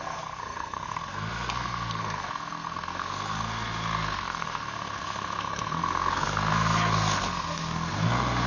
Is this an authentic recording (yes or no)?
no